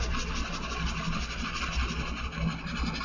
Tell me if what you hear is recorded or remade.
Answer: recorded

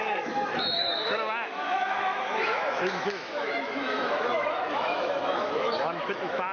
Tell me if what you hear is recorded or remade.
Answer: remade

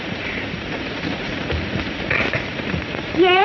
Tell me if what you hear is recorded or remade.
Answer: remade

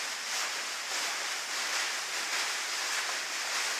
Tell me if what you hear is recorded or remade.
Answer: recorded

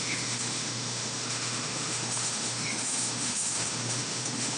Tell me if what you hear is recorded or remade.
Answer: remade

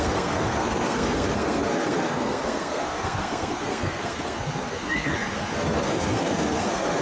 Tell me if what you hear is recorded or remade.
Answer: remade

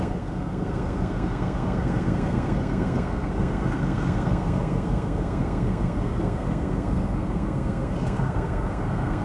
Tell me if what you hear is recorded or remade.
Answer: remade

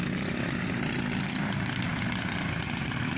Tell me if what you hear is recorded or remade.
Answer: recorded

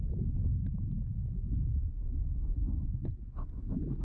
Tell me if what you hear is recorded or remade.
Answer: recorded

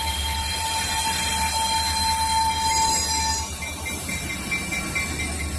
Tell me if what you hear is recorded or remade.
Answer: recorded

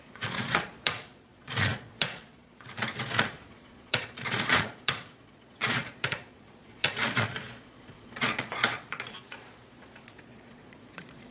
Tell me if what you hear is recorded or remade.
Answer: remade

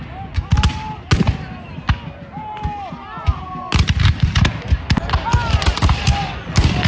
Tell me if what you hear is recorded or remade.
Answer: recorded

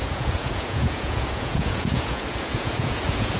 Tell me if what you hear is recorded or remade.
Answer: remade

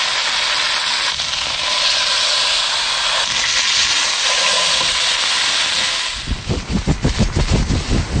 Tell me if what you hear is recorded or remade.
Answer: recorded